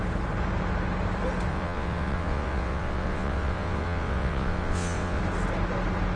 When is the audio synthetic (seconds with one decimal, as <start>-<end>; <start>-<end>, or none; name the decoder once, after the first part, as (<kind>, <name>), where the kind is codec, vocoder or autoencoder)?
1.5-5.2 (vocoder, WaveNeXt)